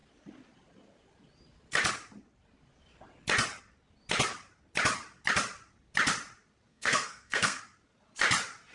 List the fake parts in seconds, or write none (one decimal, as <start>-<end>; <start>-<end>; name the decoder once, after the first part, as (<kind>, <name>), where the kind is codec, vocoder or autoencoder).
6.7-7.6 (codec, SNAC)